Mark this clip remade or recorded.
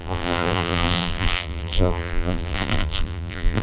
remade